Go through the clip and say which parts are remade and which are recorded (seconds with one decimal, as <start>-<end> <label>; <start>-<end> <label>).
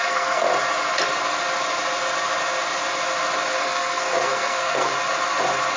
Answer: 0.0-0.5 remade; 0.5-3.6 recorded; 3.6-4.9 remade; 4.9-5.8 recorded